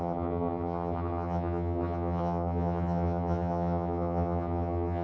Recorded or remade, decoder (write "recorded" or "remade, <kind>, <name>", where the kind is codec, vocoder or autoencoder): remade, vocoder, HiFi-GAN